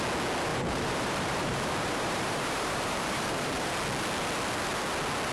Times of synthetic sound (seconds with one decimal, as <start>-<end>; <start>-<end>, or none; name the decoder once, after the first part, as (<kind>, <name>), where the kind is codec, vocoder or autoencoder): 0.5-3.7 (vocoder, BigVGAN v2)